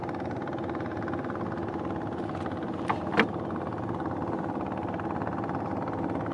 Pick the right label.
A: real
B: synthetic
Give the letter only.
A